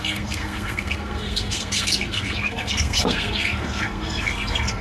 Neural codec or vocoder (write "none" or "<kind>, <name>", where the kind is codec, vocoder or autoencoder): codec, SNAC